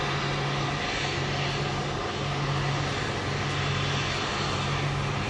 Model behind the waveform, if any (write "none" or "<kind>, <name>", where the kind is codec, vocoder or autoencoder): none